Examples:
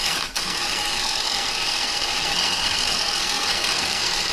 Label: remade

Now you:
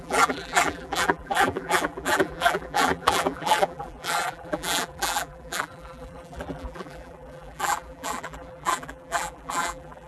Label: remade